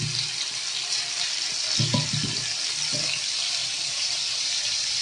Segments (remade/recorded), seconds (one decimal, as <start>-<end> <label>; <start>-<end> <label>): 0.0-3.6 recorded; 3.6-5.0 remade